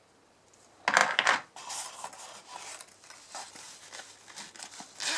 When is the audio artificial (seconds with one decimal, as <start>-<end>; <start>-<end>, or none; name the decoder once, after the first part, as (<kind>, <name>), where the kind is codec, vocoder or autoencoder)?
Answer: none